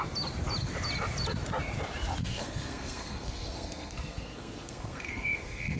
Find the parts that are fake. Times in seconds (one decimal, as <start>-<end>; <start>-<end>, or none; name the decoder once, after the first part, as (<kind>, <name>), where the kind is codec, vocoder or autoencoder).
2.2-5.8 (codec, SNAC)